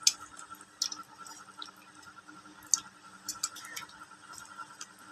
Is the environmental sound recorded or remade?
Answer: recorded